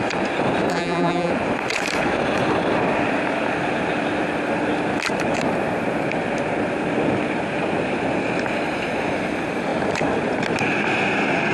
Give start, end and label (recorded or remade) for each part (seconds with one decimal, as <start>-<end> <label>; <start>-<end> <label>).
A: 0.0-0.7 recorded; 0.7-1.3 remade; 1.3-11.5 recorded